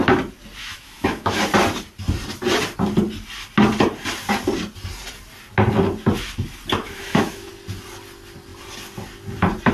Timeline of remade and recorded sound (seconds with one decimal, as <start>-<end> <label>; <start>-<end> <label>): 0.0-0.6 recorded; 0.6-1.4 remade; 1.4-6.8 recorded; 6.8-7.5 remade; 7.5-9.7 recorded